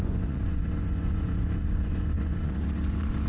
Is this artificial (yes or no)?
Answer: yes